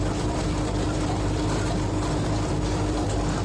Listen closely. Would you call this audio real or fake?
fake